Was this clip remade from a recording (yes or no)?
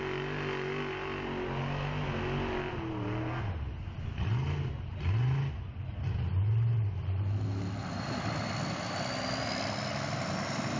no